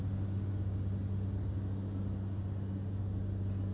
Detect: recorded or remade recorded